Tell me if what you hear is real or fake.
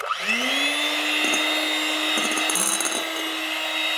real